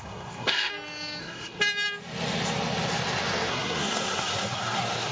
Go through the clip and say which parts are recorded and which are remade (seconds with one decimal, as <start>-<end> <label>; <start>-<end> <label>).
0.0-0.7 remade; 0.7-1.2 recorded; 1.2-1.6 remade; 1.6-3.5 recorded; 3.5-5.1 remade